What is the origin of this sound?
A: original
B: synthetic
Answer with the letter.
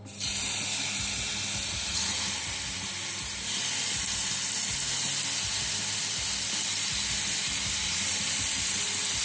A